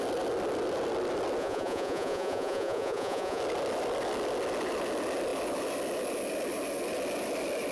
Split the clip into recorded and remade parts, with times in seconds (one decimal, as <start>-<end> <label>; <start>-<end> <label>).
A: 0.0-1.4 recorded; 1.4-3.4 remade; 3.4-7.7 recorded